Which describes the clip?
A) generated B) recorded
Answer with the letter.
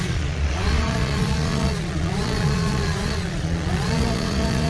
A